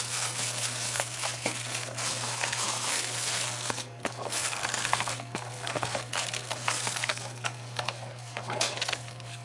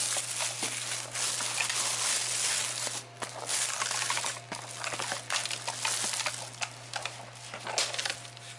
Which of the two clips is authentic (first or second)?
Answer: second